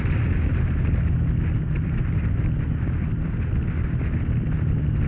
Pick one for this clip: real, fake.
real